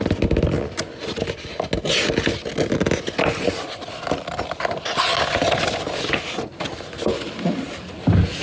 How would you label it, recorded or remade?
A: recorded